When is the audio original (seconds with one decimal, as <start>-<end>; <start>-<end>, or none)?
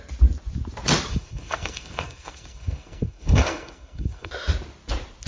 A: 0.0-1.1; 4.3-5.3